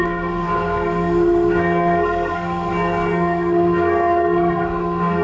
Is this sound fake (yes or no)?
yes